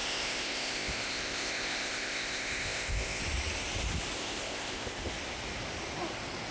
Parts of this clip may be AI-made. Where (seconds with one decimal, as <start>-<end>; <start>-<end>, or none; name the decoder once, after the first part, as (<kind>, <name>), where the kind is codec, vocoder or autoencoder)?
0.0-3.2 (codec, ZipCodec); 4.2-5.1